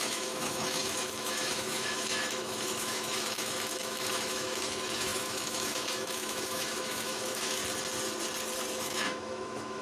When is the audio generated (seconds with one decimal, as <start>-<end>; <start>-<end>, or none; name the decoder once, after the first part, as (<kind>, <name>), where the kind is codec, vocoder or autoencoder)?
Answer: 0.0-7.6 (autoencoder, DAC-VAE); 8.8-9.8

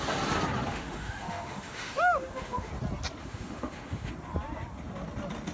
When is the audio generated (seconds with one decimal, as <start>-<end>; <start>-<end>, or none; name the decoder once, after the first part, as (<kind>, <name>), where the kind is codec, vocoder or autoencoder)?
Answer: 0.7-2.7 (autoencoder, DAC-VAE); 3.2-4.1

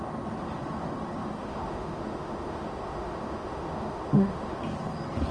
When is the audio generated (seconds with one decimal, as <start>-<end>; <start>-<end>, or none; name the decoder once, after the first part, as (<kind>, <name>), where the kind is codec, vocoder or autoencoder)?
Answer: 1.4-4.6 (autoencoder, DAC-VAE)

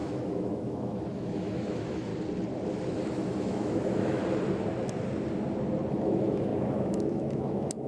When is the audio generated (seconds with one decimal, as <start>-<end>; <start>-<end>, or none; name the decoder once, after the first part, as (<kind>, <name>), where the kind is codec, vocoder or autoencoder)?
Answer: 0.0-2.1 (autoencoder, DAC-VAE); 3.1-4.2; 5.9-7.9

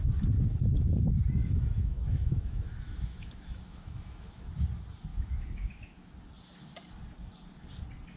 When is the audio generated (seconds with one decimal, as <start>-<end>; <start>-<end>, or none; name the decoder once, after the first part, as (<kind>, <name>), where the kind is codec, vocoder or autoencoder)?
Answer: 1.4-4.5 (autoencoder, DAC-VAE); 5.1-6.1